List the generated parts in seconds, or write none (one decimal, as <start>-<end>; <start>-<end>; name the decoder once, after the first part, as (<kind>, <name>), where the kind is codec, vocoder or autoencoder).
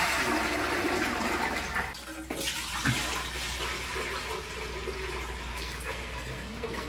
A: 5.5-6.9 (codec, SNAC)